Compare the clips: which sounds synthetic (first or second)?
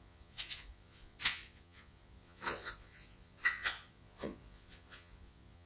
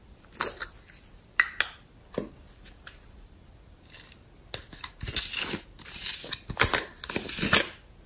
first